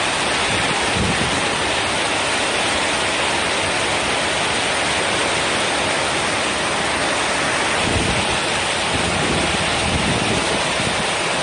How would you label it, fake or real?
real